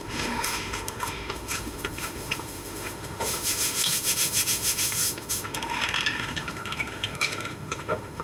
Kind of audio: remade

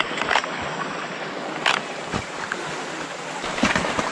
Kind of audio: recorded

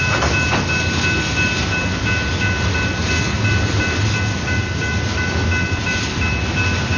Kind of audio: recorded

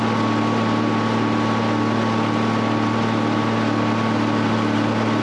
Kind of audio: recorded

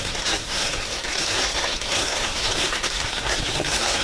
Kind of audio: remade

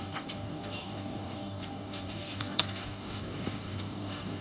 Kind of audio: remade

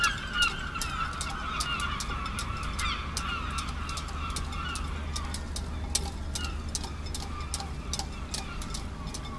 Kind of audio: recorded